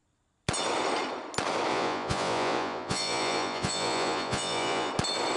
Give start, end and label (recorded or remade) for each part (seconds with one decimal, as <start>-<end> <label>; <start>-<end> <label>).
0.0-1.7 recorded; 1.7-4.9 remade; 4.9-5.4 recorded